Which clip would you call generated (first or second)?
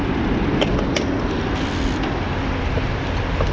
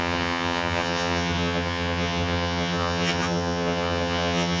second